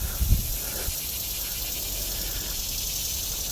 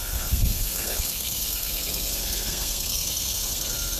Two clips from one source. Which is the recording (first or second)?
first